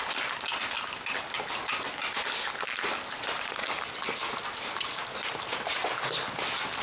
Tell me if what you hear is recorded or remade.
recorded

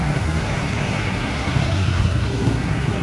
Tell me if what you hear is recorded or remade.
remade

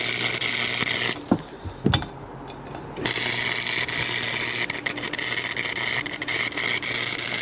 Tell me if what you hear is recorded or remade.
recorded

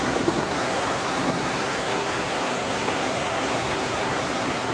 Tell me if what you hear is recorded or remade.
remade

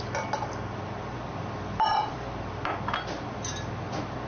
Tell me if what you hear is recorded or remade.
recorded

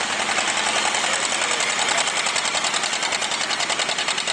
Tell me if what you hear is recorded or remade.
recorded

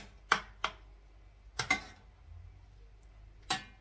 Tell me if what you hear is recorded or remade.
recorded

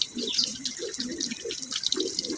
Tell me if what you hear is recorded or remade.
recorded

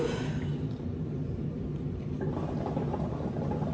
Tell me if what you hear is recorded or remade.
recorded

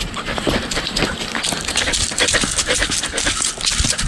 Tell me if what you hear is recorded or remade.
recorded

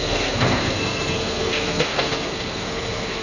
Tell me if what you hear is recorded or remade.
remade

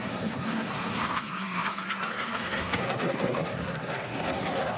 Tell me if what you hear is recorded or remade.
remade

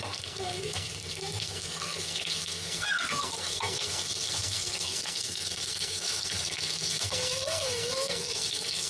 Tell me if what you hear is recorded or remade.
remade